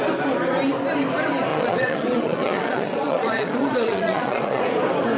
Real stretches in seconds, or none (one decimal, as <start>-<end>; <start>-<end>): 0.0-1.5; 4.6-5.2